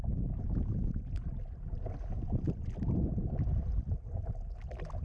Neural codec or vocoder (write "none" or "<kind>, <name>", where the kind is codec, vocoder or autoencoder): none